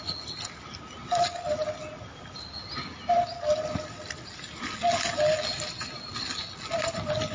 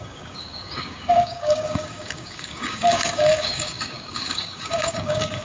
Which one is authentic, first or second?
first